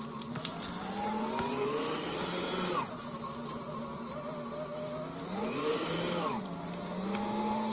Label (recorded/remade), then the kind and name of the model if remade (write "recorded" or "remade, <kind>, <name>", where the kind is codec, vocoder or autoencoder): recorded